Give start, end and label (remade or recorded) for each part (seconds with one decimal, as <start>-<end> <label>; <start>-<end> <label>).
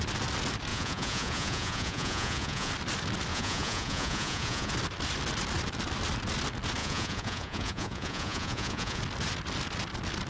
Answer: 0.0-0.7 recorded; 0.7-2.7 remade; 2.7-3.3 recorded; 3.3-4.7 remade; 4.7-6.8 recorded; 6.8-9.0 remade; 9.0-10.3 recorded